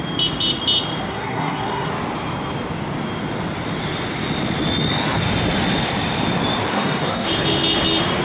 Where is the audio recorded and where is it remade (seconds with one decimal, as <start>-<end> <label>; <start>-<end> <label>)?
0.0-1.1 recorded; 1.1-1.9 remade; 1.9-6.7 recorded; 6.7-7.3 remade; 7.3-8.2 recorded

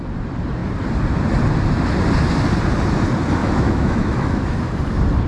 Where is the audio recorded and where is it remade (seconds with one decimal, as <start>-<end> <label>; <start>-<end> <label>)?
0.0-3.4 recorded; 3.4-4.7 remade; 4.7-5.3 recorded

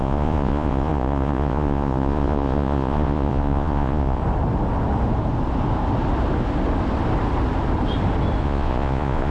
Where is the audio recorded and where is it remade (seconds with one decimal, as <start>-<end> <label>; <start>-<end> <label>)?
0.0-4.2 remade; 4.2-8.4 recorded; 8.4-9.3 remade